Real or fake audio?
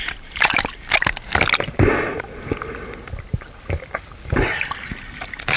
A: real